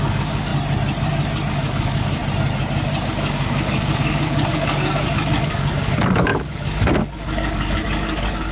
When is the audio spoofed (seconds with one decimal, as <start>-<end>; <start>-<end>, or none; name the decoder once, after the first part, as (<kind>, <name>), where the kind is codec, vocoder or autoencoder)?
0.0-0.5 (codec, DAC); 1.5-2.2; 3.1-8.5